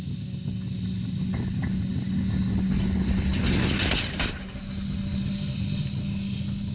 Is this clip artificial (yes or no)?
no